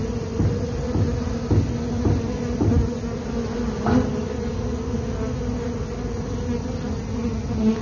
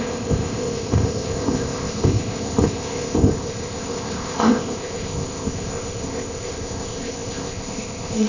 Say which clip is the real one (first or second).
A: first